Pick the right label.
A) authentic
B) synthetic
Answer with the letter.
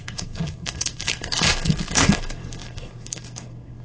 B